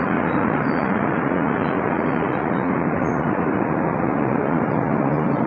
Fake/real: fake